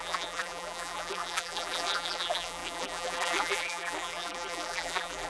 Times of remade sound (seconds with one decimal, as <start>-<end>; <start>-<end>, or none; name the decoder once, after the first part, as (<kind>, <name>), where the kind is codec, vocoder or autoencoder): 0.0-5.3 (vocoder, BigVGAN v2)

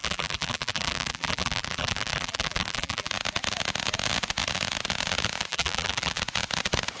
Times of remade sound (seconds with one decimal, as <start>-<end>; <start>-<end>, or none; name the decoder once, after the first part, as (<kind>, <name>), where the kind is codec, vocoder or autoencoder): 0.0-3.1 (vocoder, BigVGAN v2); 5.5-6.2

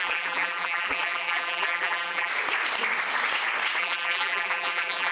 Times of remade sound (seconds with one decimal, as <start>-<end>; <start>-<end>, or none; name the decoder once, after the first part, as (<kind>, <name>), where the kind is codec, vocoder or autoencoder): 0.0-2.3 (vocoder, BigVGAN v2); 3.8-5.1

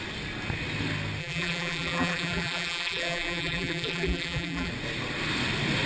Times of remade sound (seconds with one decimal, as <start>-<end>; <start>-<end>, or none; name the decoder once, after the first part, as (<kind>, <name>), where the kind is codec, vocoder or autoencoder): 1.2-4.7 (vocoder, BigVGAN v2)